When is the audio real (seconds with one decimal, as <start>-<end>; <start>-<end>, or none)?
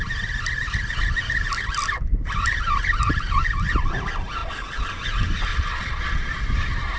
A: 0.0-4.4; 4.9-5.5; 6.4-7.0